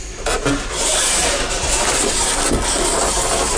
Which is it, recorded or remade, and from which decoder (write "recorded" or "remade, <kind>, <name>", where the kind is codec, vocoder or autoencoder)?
recorded